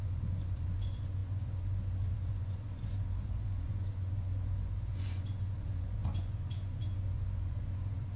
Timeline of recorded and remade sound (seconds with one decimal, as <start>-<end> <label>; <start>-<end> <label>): 0.0-8.2 remade